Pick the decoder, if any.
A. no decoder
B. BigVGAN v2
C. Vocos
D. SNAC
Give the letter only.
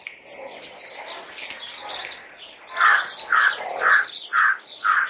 A